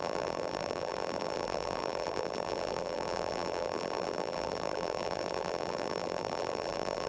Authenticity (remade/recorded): remade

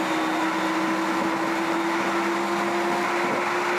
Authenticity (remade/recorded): recorded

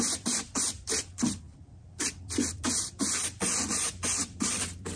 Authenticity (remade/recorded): remade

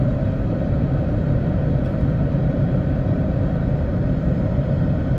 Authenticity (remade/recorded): remade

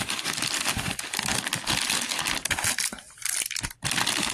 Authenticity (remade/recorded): recorded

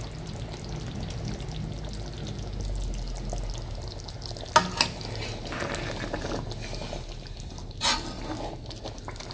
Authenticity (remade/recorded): recorded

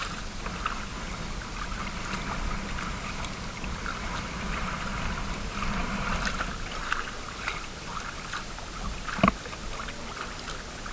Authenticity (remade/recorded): recorded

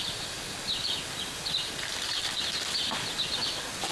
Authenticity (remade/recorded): remade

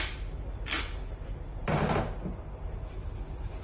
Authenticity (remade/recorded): recorded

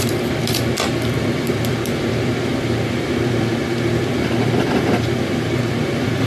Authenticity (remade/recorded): remade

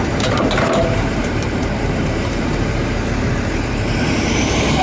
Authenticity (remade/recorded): remade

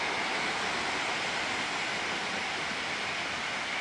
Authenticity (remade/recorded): recorded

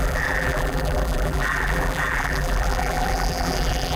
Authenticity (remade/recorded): remade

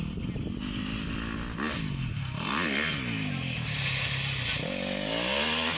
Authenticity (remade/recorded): recorded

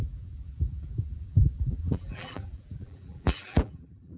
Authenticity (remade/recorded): remade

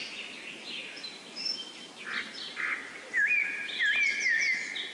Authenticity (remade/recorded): recorded